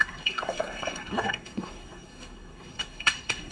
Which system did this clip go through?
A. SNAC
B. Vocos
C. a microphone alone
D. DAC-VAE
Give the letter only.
A